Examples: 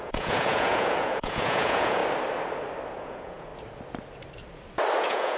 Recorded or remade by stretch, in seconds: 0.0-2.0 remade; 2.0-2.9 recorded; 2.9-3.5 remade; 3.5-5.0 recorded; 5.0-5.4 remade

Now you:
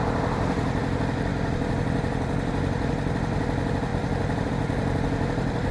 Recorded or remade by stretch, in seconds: 0.0-5.7 recorded